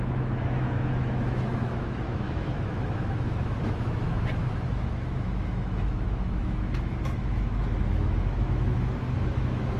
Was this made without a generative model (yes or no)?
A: no